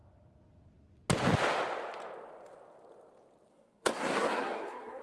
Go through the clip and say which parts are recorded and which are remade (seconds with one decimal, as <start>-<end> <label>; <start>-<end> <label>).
0.0-3.5 recorded; 3.5-5.0 remade